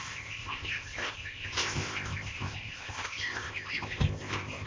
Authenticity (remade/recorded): remade